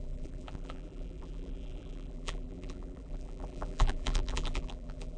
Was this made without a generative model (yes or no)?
no